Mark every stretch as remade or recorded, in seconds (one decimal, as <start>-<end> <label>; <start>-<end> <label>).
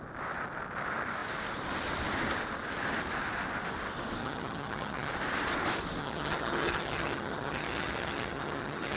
0.0-4.2 recorded; 4.2-5.1 remade; 5.1-6.0 recorded; 6.0-9.0 remade